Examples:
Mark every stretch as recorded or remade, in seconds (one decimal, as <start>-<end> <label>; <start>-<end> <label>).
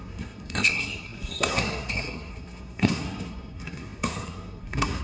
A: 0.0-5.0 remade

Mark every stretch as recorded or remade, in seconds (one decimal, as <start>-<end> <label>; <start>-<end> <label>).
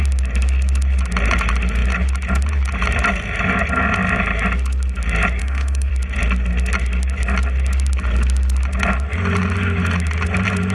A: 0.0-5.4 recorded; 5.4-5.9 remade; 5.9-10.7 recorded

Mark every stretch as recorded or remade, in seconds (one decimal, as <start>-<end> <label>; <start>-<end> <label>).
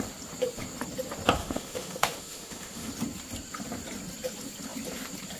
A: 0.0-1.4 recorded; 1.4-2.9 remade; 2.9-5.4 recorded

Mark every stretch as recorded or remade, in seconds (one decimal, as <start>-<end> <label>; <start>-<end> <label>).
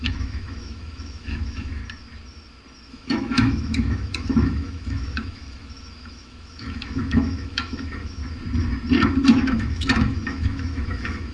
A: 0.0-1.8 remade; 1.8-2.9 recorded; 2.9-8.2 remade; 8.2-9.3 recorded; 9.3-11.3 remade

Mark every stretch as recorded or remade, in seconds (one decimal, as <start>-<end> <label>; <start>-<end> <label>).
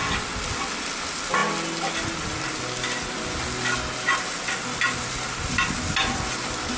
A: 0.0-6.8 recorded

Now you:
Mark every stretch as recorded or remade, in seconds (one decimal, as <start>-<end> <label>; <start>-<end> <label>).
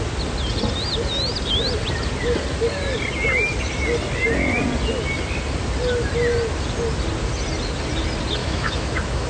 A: 0.0-8.4 recorded; 8.4-9.3 remade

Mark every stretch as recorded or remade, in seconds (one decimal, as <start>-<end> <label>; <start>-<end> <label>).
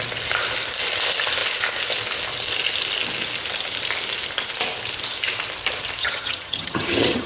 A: 0.0-6.0 recorded; 6.0-7.3 remade